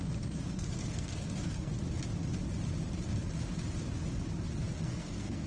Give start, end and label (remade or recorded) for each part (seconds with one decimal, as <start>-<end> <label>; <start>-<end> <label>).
0.0-1.7 remade; 1.7-4.8 recorded; 4.8-5.5 remade